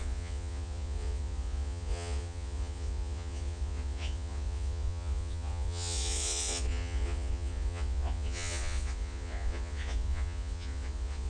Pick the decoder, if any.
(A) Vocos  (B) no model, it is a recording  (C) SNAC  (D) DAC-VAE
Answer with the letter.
A